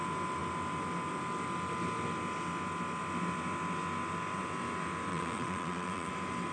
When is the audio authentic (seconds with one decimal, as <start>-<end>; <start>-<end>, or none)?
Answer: 0.0-5.1; 6.1-6.5

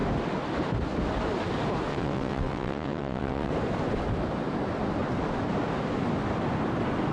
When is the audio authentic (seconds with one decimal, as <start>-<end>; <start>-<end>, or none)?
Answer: 0.0-1.9; 3.5-7.1